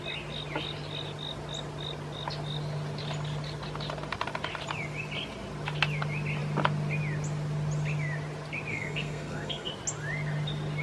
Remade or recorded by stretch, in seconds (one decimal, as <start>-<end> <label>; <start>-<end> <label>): 0.0-8.7 recorded; 8.7-9.7 remade; 9.7-10.8 recorded